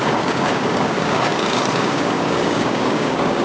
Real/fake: fake